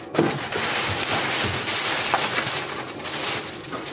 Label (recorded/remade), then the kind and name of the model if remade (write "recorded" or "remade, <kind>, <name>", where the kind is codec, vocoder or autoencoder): recorded